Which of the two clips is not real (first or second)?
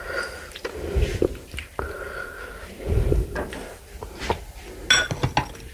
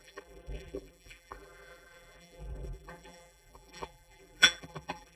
second